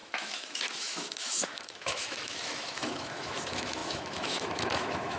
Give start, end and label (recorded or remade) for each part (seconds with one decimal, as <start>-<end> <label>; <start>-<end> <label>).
0.0-5.2 remade